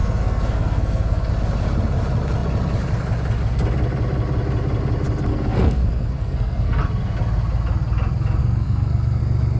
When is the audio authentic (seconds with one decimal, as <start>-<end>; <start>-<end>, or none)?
1.3-5.3; 6.8-8.4; 9.2-9.6